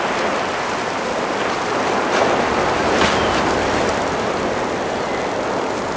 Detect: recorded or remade recorded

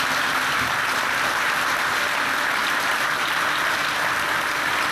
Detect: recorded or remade recorded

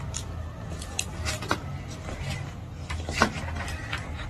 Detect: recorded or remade remade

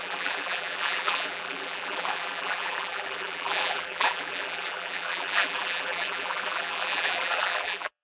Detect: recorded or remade remade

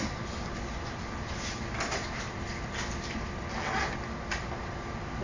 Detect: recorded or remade recorded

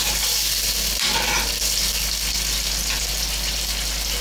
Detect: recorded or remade recorded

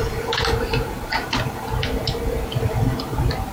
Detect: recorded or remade remade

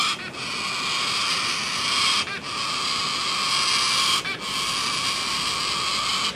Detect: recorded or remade recorded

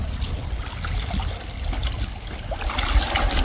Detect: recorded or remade recorded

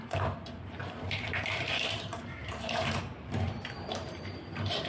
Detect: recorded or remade remade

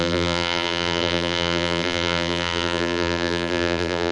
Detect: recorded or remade remade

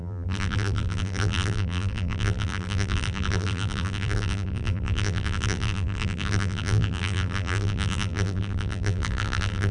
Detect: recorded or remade remade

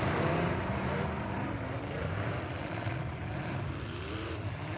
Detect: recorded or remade remade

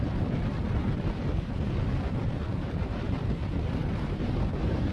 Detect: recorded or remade remade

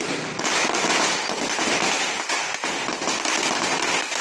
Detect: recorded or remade recorded